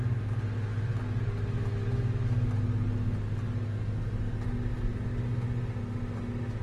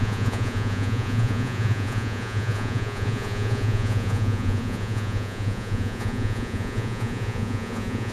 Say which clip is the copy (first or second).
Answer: second